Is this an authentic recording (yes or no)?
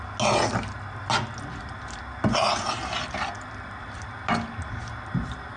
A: yes